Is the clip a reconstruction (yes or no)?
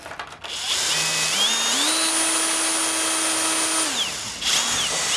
no